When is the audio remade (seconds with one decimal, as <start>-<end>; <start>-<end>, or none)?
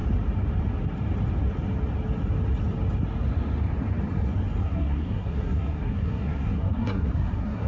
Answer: 4.6-7.7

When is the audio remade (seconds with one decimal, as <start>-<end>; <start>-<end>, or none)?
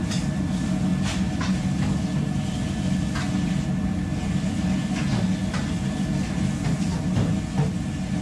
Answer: none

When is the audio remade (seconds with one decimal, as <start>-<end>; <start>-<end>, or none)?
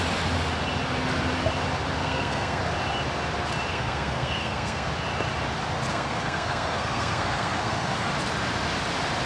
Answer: 2.0-2.6; 3.7-4.9; 5.9-8.1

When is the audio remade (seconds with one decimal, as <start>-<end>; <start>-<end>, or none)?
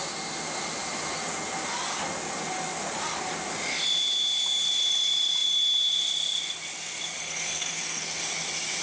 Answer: 7.2-8.2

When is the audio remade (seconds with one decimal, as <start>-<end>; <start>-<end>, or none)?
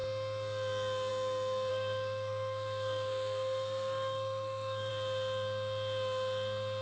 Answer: 1.7-4.9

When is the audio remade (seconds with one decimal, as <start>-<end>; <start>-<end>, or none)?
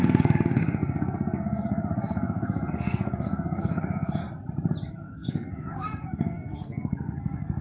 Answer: 0.0-4.2; 4.9-7.6